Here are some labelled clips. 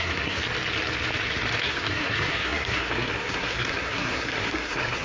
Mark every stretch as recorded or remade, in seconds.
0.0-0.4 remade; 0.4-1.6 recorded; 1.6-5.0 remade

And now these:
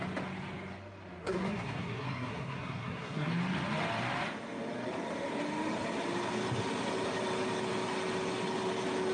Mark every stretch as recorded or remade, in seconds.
0.0-1.2 recorded; 1.2-3.3 remade; 3.3-9.1 recorded

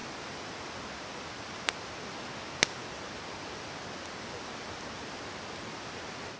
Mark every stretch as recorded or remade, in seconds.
0.0-6.4 recorded